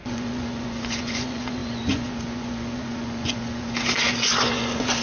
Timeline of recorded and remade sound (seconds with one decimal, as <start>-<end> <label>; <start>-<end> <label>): 0.0-5.0 remade